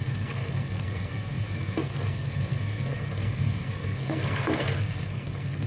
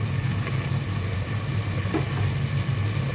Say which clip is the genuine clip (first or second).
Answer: second